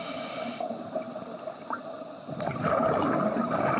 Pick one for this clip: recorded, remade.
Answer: recorded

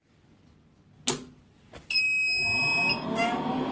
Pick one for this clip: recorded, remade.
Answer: recorded